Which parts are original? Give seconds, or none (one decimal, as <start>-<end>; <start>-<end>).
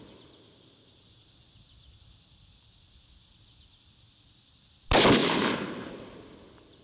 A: 0.0-6.8